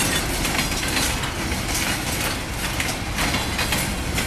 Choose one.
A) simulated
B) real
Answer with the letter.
B